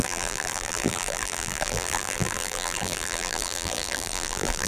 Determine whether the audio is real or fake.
fake